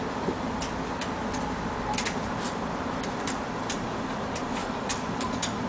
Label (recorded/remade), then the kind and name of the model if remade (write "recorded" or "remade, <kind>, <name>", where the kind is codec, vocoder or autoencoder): remade, vocoder, BigVGAN v2